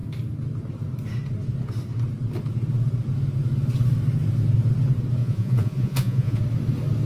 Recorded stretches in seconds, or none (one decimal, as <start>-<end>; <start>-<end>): 0.0-5.2; 6.4-7.1